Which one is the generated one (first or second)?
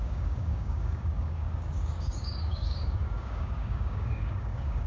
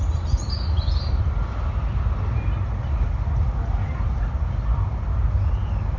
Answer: first